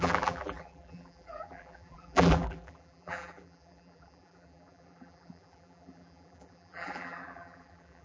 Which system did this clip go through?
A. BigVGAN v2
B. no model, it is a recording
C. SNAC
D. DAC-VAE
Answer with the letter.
A